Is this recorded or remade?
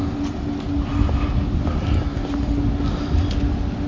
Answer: recorded